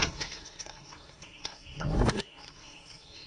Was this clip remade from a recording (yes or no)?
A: yes